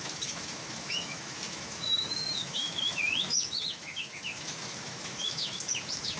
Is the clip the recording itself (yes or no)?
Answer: no